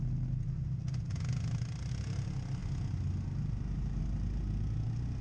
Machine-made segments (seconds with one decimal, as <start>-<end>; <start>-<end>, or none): none